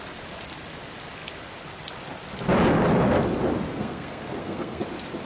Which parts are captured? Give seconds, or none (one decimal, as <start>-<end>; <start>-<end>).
0.0-3.8; 4.8-5.3

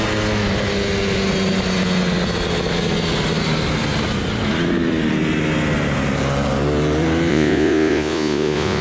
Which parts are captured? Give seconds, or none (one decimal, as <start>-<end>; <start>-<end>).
0.0-7.3

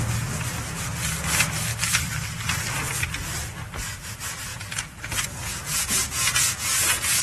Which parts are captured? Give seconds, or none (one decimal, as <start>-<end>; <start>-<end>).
0.0-4.5

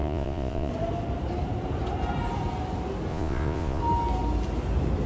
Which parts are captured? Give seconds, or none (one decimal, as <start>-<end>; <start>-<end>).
0.7-3.1; 3.8-5.1